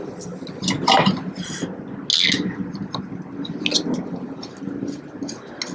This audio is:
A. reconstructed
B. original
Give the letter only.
B